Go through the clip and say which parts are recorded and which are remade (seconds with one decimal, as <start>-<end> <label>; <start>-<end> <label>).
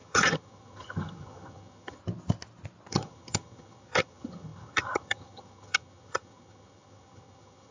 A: 0.0-2.0 remade; 2.0-2.9 recorded; 2.9-7.7 remade